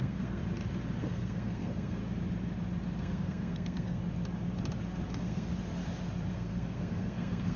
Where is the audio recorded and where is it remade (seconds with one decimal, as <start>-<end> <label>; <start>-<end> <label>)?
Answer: 0.0-0.4 remade; 0.4-1.0 recorded; 1.0-2.0 remade; 2.0-3.0 recorded; 3.0-4.0 remade; 4.0-5.1 recorded; 5.1-5.5 remade; 5.5-6.3 recorded; 6.3-7.6 remade